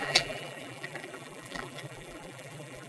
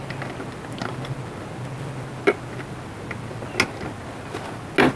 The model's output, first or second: first